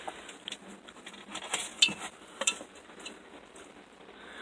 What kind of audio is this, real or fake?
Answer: real